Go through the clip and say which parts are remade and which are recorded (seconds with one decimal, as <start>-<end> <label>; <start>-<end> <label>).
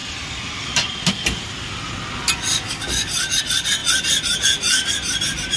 0.0-5.6 recorded